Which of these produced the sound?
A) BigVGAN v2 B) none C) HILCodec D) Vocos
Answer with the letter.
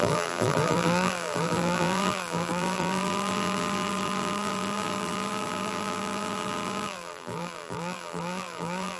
A